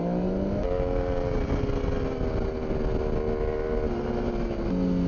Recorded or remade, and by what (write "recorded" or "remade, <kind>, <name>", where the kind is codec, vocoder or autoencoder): recorded